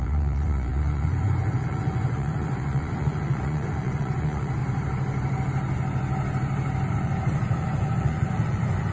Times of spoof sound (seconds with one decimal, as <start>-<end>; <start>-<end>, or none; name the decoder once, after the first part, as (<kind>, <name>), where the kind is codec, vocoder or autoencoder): 0.0-4.6 (vocoder, Vocos); 6.9-8.9